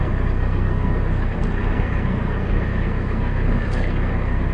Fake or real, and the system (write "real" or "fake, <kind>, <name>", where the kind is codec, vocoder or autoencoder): fake, codec, SNAC